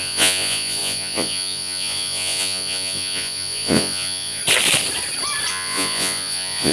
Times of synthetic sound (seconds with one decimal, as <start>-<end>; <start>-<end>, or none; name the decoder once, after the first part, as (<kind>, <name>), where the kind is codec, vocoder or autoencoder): 0.0-4.4 (vocoder, Vocos); 5.5-6.7

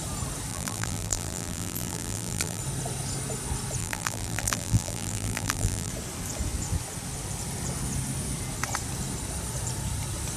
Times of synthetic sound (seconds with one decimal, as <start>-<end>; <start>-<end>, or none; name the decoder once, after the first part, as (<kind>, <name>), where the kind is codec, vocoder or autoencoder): 0.5-2.6 (vocoder, BigVGAN v2); 3.8-5.9

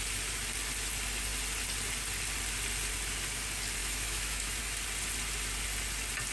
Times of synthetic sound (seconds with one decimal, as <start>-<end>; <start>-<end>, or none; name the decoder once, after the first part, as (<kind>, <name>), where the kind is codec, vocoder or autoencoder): 3.8-4.6 (autoencoder, DAC-VAE)

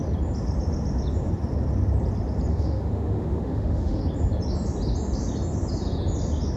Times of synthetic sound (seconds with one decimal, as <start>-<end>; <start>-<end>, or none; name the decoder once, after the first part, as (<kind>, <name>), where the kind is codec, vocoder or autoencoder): 2.5-4.0 (autoencoder, DAC-VAE)

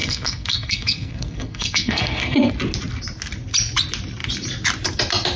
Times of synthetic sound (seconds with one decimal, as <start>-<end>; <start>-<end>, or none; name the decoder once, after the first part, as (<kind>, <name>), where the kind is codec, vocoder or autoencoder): 0.0-2.5 (codec, SNAC)